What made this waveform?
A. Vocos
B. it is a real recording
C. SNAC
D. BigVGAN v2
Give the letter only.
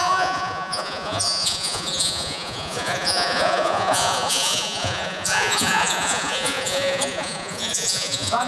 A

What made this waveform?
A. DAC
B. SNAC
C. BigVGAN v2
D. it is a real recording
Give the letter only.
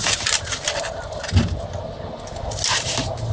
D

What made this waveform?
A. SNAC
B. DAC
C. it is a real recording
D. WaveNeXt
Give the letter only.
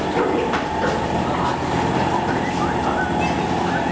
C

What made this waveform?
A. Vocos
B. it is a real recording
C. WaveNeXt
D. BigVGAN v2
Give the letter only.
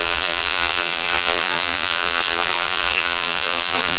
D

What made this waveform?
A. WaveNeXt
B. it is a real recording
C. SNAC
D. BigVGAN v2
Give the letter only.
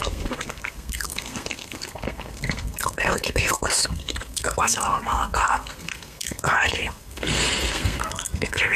C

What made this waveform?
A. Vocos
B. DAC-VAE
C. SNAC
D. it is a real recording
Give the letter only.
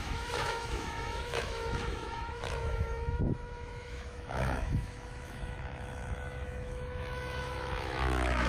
B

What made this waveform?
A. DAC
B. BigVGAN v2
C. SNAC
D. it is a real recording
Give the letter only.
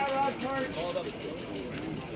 D